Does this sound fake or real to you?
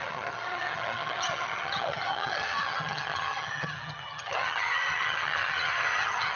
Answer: fake